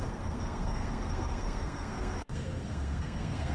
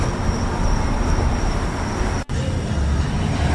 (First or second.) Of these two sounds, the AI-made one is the first